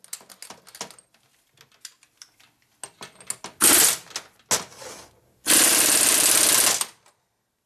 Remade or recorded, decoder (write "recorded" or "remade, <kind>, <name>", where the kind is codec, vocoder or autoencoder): recorded